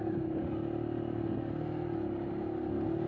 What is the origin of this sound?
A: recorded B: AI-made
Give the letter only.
A